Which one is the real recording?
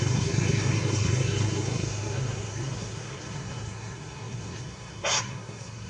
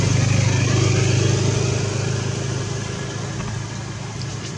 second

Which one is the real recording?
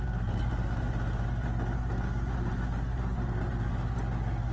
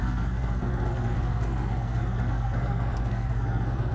first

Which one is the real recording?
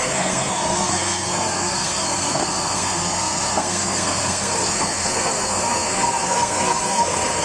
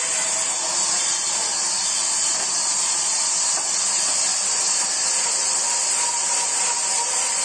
second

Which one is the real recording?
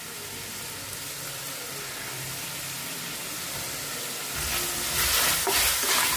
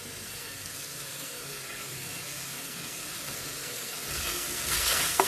first